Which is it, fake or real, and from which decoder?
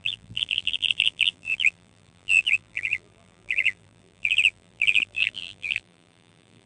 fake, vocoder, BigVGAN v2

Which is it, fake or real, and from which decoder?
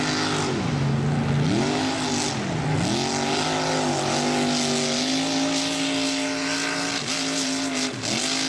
real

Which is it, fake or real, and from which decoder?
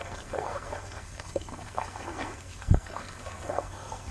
fake, codec, SNAC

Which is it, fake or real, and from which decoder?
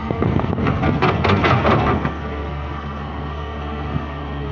fake, codec, SNAC